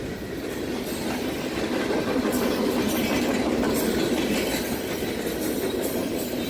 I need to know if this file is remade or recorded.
recorded